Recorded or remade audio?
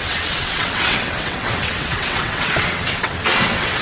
remade